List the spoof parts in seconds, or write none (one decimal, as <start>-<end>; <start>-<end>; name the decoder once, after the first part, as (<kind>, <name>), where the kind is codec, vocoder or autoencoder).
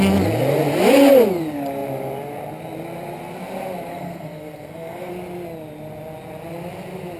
3.9-5.1 (codec, SNAC)